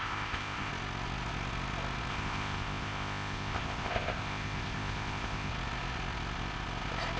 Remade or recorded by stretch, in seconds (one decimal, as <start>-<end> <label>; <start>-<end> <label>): 0.0-0.7 remade; 0.7-2.1 recorded; 2.1-5.5 remade; 5.5-7.2 recorded

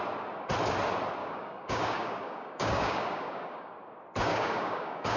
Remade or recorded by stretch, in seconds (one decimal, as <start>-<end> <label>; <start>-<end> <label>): 0.0-1.2 recorded; 1.2-3.7 remade; 3.7-4.3 recorded; 4.3-5.2 remade

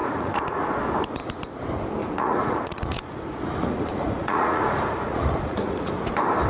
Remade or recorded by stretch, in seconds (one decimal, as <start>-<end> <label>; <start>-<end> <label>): 0.0-0.7 remade; 0.7-2.0 recorded; 2.0-5.9 remade; 5.9-6.5 recorded

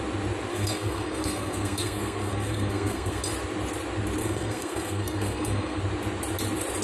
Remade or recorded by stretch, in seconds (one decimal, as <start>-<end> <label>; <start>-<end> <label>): 0.0-0.5 recorded; 0.5-3.2 remade; 3.2-4.2 recorded; 4.2-5.8 remade; 5.8-6.8 recorded

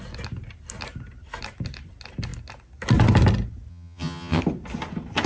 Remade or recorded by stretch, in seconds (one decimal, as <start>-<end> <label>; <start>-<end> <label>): 0.0-3.7 recorded; 3.7-4.4 remade; 4.4-5.3 recorded

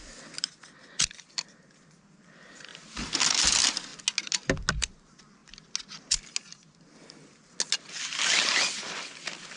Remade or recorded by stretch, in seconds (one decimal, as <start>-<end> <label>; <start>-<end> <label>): 0.0-2.7 recorded; 2.7-3.4 remade; 3.4-9.6 recorded

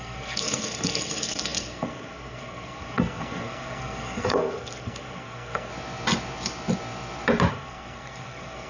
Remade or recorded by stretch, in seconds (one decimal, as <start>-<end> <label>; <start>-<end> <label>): 0.0-5.7 remade; 5.7-7.5 recorded; 7.5-8.7 remade